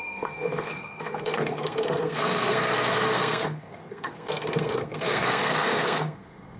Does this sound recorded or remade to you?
remade